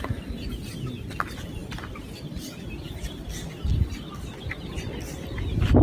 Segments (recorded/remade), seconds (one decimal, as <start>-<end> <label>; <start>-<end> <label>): 0.0-5.8 recorded